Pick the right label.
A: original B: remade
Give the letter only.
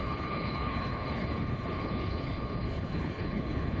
B